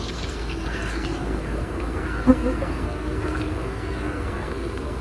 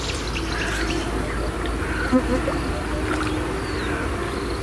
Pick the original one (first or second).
second